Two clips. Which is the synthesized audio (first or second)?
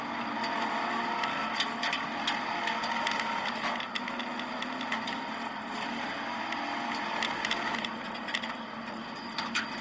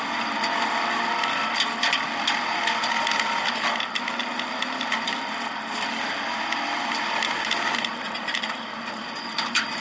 second